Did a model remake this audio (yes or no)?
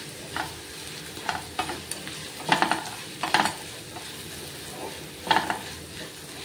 no